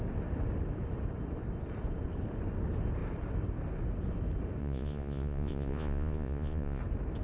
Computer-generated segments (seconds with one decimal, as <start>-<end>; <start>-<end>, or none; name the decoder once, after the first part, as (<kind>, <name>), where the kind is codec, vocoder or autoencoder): 4.6-6.8 (vocoder, Vocos)